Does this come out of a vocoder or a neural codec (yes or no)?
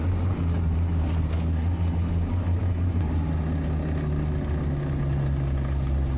no